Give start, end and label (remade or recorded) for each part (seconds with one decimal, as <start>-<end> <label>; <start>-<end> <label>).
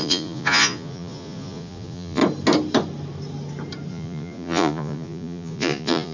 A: 0.0-2.2 remade; 2.2-3.9 recorded; 3.9-6.1 remade